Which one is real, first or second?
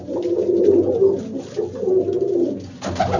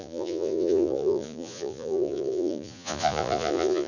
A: first